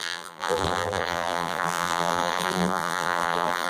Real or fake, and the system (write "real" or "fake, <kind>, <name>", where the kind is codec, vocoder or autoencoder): fake, vocoder, BigVGAN v2